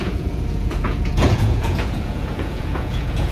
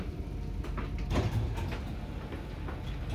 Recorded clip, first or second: second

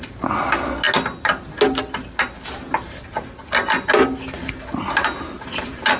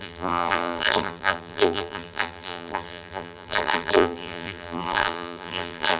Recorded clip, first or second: first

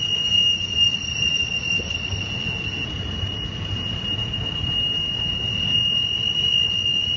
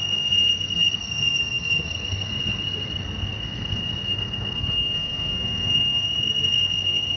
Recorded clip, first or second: first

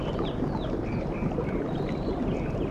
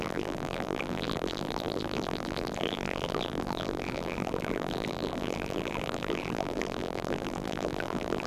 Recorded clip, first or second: first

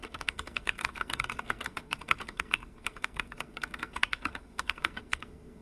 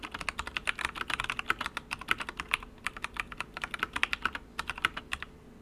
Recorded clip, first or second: second